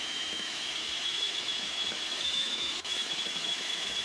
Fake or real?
fake